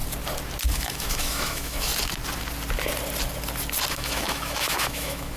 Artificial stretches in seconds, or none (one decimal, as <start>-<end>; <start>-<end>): 0.7-1.9; 3.9-5.4